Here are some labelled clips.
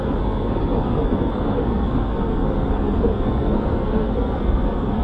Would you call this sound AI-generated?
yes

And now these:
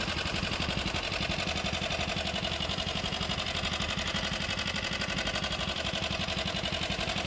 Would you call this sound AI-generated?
no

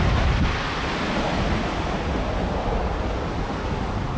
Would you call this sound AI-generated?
no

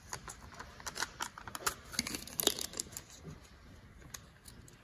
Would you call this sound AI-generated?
no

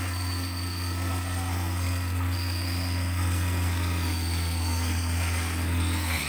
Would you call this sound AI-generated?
yes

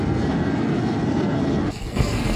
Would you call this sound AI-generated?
yes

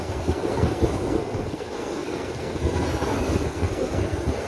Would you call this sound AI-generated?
yes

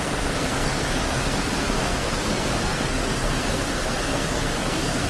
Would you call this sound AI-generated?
yes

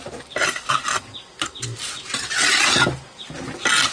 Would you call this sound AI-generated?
no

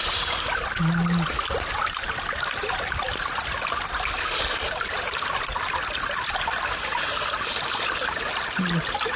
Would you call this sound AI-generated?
no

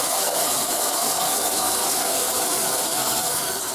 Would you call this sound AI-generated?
yes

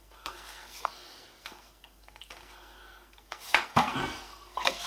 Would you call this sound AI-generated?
yes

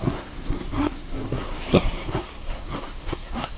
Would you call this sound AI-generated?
yes